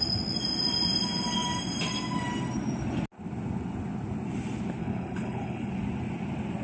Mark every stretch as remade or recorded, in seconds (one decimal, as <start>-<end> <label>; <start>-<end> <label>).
0.0-4.8 recorded; 4.8-5.7 remade; 5.7-6.6 recorded